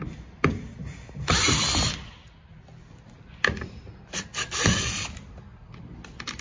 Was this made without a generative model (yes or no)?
yes